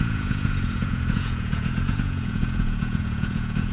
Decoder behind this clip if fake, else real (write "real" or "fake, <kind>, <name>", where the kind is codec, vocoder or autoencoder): fake, vocoder, Vocos